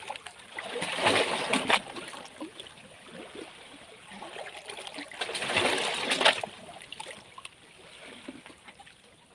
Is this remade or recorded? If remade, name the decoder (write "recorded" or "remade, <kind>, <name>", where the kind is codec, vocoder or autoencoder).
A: remade, vocoder, BigVGAN v2